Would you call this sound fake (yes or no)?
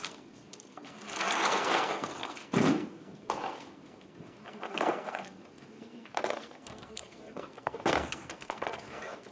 yes